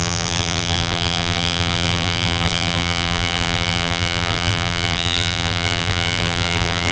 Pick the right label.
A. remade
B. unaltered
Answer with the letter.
A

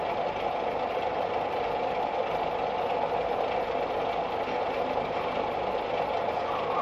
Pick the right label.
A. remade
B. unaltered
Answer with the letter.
B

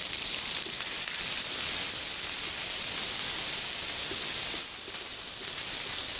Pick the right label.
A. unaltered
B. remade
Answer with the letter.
A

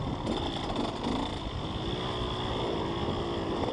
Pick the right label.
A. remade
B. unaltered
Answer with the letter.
B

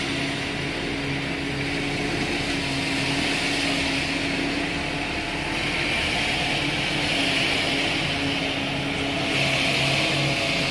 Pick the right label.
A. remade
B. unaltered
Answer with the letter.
B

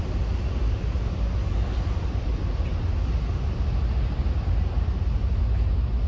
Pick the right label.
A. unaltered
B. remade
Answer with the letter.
A